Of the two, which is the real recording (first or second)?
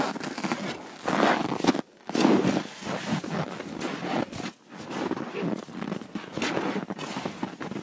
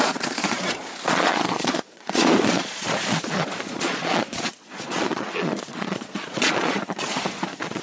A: first